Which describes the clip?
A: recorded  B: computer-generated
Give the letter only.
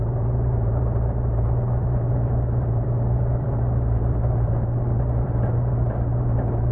B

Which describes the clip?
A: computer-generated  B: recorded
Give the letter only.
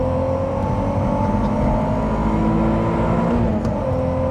B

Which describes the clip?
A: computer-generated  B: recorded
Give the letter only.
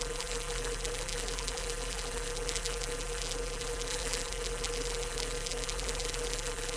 A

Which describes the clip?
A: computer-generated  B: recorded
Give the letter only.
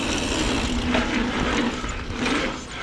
B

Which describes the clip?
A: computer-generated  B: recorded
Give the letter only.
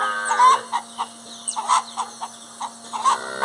B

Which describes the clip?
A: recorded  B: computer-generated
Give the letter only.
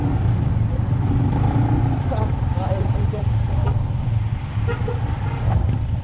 B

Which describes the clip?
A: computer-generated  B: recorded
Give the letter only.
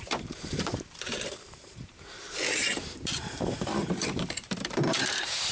A